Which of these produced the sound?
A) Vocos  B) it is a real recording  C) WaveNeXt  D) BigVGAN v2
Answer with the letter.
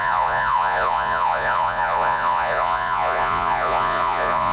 A